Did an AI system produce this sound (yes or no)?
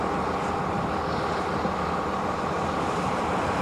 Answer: no